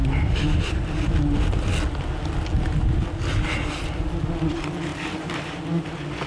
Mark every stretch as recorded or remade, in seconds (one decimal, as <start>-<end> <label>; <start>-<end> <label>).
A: 0.0-4.9 recorded; 4.9-5.6 remade; 5.6-6.3 recorded